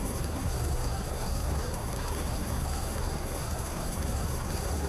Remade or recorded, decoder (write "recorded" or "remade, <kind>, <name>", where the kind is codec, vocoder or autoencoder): remade, codec, SNAC